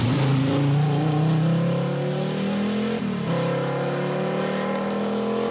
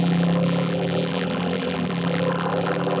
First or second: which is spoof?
second